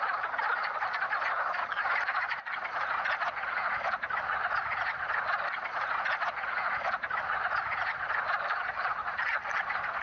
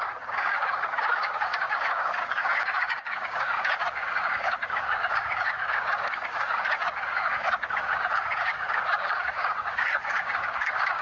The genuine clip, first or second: first